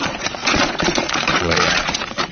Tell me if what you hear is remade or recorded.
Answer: remade